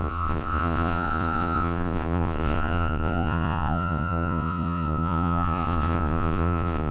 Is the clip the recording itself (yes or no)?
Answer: no